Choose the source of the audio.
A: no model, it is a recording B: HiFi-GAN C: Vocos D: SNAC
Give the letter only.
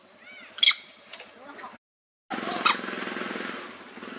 A